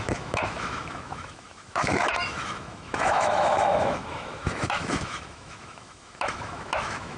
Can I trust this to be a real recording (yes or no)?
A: no